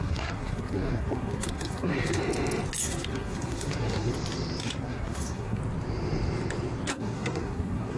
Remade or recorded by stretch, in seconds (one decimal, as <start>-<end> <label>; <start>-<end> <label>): 0.0-2.2 remade; 2.2-2.8 recorded; 2.8-4.1 remade; 4.1-4.6 recorded; 4.6-5.6 remade; 5.6-6.9 recorded; 6.9-8.0 remade